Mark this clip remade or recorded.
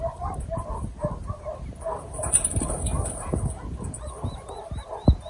recorded